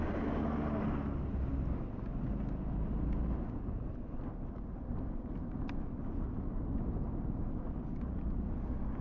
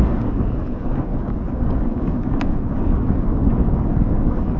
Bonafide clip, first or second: first